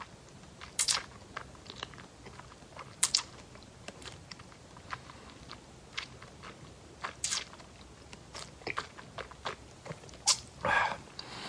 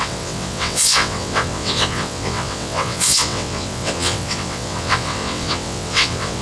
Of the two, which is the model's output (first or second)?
second